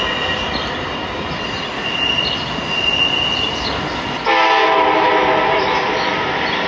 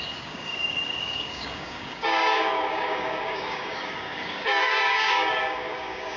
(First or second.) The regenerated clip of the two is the second